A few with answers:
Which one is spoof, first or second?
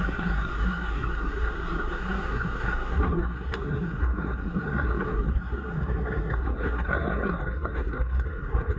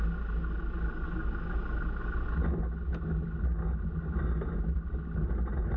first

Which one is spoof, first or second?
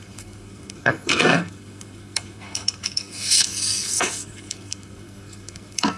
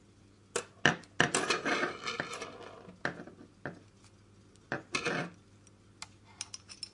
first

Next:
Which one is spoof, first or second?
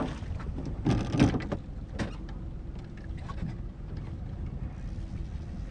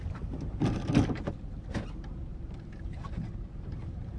second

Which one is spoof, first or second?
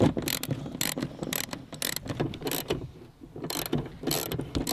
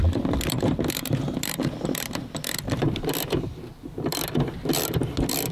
second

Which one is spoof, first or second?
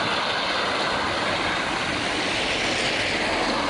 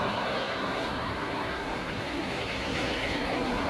second